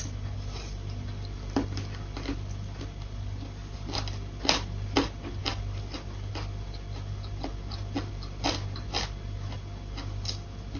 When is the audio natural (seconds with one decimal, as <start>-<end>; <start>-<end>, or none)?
0.0-10.8